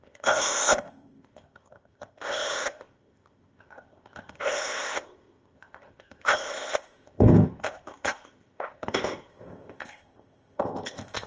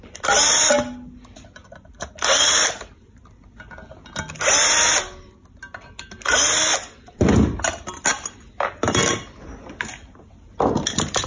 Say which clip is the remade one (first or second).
first